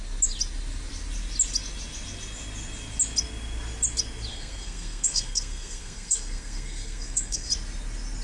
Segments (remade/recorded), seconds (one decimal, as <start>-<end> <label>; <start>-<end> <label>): 0.0-4.3 recorded; 4.3-7.5 remade; 7.5-8.2 recorded